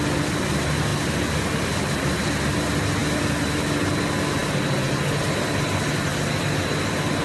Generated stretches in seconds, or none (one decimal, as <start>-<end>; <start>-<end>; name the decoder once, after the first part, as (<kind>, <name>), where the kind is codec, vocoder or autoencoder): none